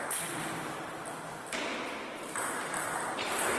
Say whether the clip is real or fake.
real